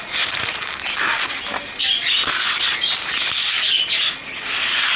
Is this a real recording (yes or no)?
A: yes